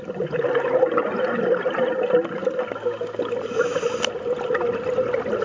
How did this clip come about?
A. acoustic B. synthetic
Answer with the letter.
A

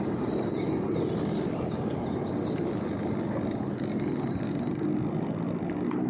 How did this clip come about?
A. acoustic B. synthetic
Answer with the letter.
A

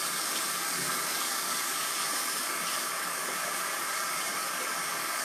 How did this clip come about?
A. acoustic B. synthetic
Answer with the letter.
B